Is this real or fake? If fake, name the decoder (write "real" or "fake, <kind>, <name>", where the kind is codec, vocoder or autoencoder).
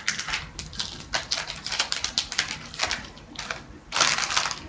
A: real